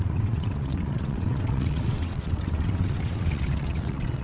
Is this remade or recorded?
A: remade